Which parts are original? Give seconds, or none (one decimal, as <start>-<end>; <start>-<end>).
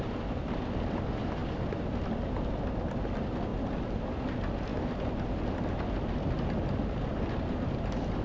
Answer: 0.0-8.2